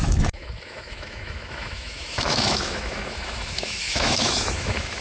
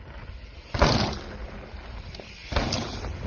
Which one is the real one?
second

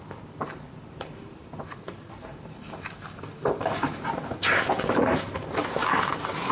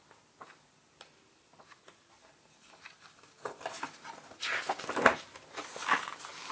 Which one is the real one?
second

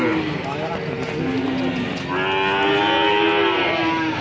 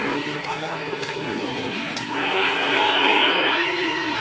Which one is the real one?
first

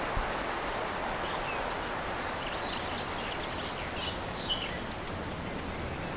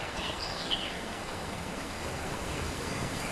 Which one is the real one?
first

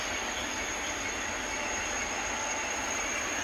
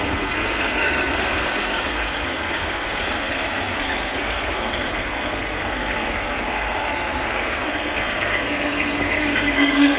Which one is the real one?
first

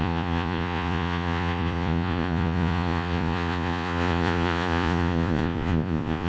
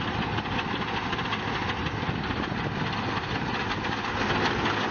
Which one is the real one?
second